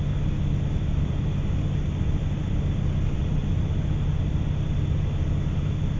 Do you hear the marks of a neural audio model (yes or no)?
no